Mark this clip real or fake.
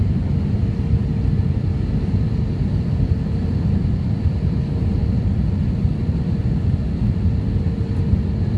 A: real